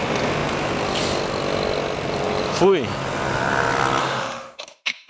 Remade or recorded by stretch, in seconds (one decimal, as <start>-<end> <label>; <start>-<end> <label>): 0.0-4.0 recorded; 4.0-5.1 remade